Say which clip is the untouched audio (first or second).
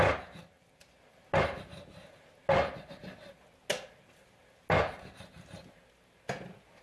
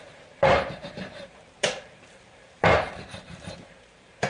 first